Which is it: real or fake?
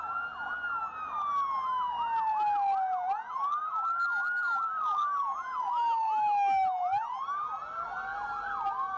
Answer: real